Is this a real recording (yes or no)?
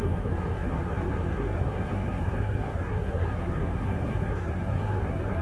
no